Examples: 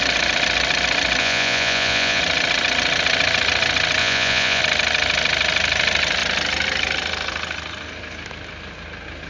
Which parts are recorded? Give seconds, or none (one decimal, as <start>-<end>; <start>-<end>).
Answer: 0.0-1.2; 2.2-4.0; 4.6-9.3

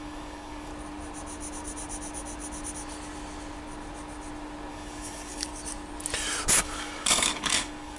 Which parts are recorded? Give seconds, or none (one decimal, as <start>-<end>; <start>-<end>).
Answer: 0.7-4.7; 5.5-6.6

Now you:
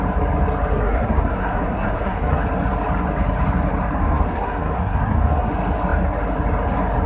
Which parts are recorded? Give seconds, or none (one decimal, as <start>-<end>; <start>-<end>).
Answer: 0.0-0.7; 2.4-4.0; 5.5-7.1

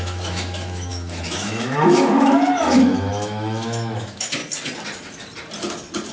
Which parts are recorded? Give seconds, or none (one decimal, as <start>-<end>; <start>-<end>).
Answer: 4.4-6.1